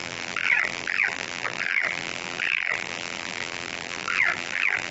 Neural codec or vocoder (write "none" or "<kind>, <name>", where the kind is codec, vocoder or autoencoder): vocoder, BigVGAN v2